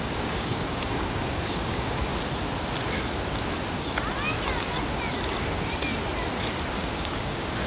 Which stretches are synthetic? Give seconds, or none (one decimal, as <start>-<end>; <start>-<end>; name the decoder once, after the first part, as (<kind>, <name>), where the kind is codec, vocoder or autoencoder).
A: 0.0-2.1 (codec, DAC); 6.7-7.7